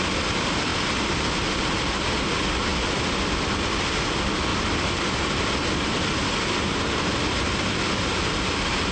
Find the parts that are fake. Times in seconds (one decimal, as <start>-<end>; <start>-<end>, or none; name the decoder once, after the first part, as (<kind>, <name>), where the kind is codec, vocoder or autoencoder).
4.5-6.6 (vocoder, BigVGAN v2)